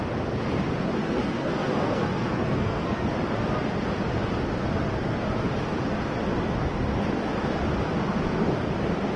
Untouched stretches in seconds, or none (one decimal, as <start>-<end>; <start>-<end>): 0.0-1.0; 3.1-9.2